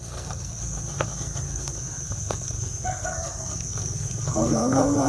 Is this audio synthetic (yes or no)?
yes